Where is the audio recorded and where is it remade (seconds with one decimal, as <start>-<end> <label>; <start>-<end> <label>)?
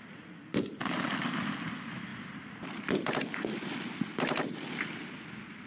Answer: 0.0-5.7 recorded